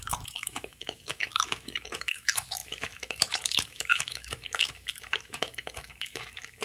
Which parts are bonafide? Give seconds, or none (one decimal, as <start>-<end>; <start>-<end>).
none